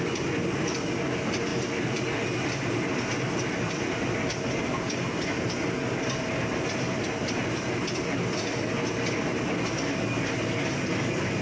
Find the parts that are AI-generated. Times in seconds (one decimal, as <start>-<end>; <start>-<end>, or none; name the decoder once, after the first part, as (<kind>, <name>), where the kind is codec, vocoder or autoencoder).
none